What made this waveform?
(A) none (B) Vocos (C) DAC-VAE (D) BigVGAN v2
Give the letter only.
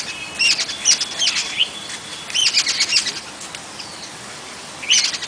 A